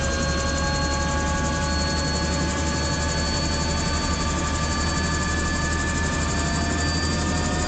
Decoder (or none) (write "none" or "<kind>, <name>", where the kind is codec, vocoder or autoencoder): none